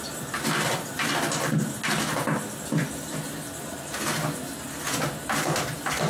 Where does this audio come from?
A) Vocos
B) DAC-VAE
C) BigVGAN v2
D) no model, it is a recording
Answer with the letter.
D